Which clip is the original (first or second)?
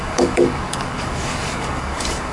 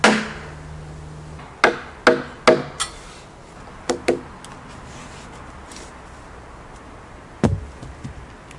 second